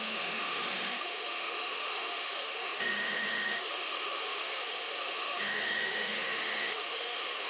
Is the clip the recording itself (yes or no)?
no